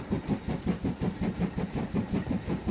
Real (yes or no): no